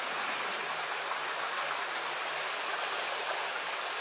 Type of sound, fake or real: real